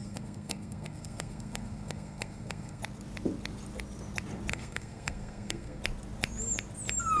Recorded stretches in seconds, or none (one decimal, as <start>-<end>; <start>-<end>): 2.8-4.5; 5.8-7.2